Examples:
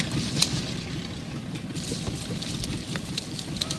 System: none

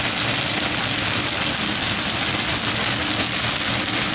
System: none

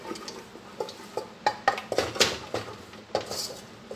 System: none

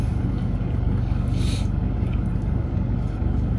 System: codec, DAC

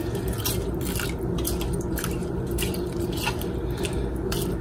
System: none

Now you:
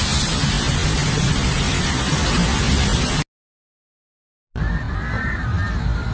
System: none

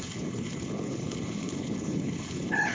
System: codec, HILCodec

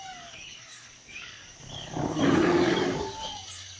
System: codec, DAC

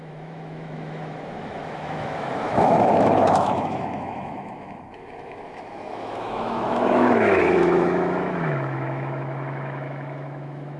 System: autoencoder, DAC-VAE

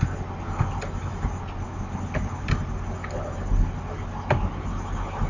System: none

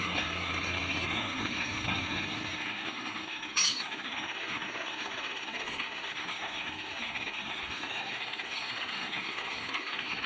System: codec, SNAC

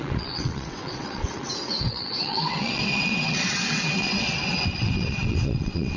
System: vocoder, WaveNeXt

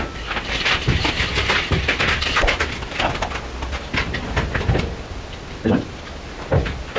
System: none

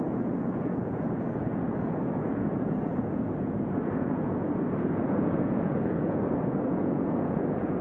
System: vocoder, Vocos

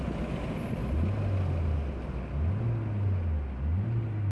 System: none